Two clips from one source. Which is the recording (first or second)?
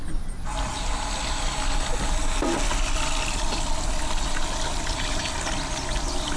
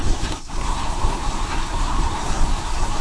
first